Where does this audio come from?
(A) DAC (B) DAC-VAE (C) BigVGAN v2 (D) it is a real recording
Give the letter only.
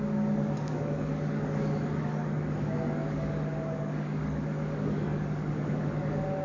A